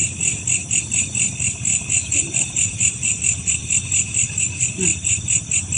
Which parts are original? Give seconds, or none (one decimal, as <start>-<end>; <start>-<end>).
0.0-1.7; 3.2-5.8